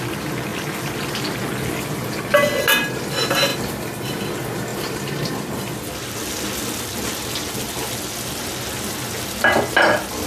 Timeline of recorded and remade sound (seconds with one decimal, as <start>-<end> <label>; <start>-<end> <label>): 0.0-10.3 recorded